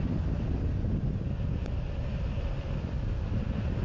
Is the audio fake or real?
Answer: real